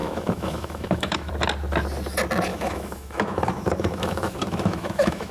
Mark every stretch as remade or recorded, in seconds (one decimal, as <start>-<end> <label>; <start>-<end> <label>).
0.0-1.3 remade; 1.3-2.5 recorded; 2.5-5.3 remade